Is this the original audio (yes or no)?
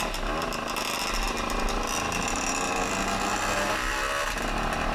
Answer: yes